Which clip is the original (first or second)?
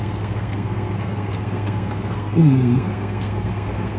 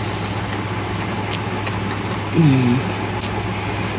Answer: second